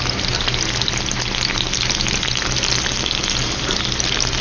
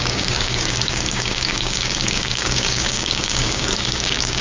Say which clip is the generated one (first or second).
second